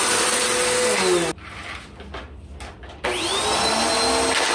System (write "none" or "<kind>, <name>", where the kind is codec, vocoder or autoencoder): none